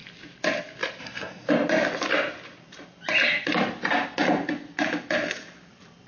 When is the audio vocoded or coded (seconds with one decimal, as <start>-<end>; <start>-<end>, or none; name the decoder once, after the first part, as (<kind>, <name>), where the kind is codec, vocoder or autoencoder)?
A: 1.0-1.5 (codec, SNAC)